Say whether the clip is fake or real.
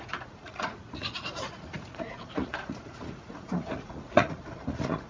fake